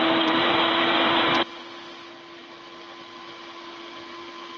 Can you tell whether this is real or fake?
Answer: fake